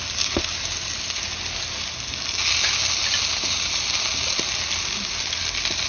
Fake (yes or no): no